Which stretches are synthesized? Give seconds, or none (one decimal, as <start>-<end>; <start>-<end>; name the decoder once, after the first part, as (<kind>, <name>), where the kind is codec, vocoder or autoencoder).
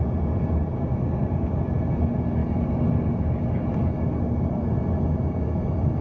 none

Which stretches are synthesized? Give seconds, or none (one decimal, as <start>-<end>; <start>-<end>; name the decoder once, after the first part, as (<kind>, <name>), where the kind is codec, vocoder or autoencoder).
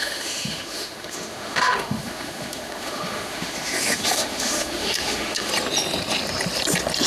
0.0-5.5 (autoencoder, DAC-VAE)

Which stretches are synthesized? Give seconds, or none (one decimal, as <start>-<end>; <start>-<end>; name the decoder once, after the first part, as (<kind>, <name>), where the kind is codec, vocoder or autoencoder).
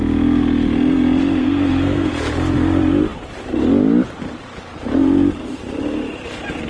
1.4-2.1 (codec, SNAC)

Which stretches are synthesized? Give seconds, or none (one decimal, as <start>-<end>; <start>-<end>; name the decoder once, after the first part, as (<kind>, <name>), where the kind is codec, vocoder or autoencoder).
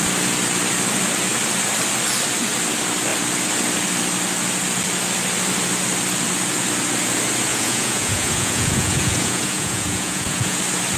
7.5-10.6 (vocoder, Vocos)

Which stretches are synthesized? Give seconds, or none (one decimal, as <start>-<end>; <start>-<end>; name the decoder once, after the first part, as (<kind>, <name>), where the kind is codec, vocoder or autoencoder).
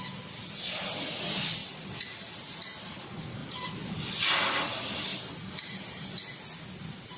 5.1-6.0 (vocoder, BigVGAN v2)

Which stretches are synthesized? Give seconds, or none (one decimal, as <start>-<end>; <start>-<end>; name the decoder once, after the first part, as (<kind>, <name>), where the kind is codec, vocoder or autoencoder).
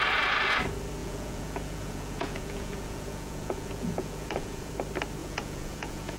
1.0-4.7 (vocoder, Vocos); 5.2-6.2